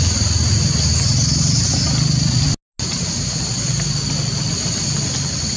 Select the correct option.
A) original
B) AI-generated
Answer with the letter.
A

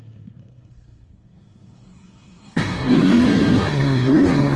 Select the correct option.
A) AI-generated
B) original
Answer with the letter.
A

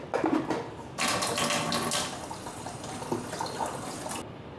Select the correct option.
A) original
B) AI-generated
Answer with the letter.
A